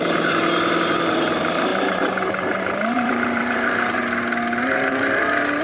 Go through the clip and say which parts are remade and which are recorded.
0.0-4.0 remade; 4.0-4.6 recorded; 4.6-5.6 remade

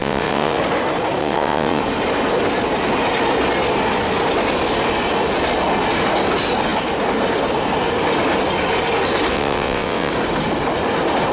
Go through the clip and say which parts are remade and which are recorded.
0.0-0.6 remade; 0.6-1.2 recorded; 1.2-1.8 remade; 1.8-9.3 recorded; 9.3-10.1 remade; 10.1-11.3 recorded

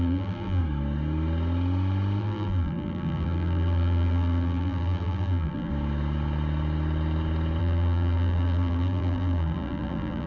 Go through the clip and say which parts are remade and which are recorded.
0.0-0.6 remade; 0.6-2.2 recorded; 2.2-5.7 remade; 5.7-7.6 recorded; 7.6-10.3 remade